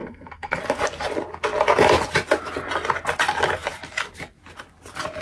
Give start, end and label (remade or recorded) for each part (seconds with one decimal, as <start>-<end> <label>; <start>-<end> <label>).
0.0-0.6 remade; 0.6-5.2 recorded